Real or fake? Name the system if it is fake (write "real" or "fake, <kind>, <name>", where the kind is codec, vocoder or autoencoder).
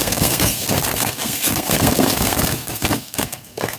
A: fake, codec, SNAC